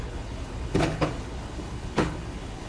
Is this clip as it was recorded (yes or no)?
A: no